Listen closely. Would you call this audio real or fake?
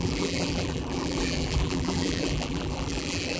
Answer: fake